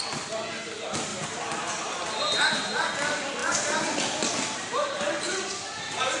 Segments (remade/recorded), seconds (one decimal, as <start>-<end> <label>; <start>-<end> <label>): 0.0-6.2 recorded